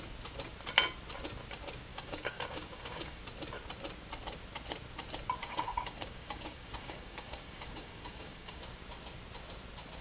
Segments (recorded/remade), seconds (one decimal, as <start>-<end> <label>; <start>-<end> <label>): 0.0-1.9 recorded; 1.9-3.2 remade; 3.2-5.4 recorded; 5.4-8.6 remade; 8.6-10.0 recorded